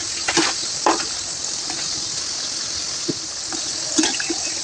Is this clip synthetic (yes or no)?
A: no